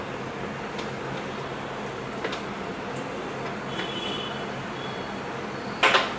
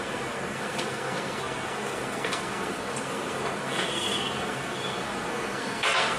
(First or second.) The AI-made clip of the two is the second